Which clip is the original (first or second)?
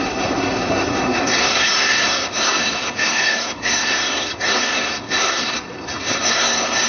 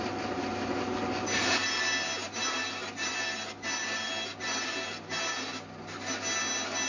second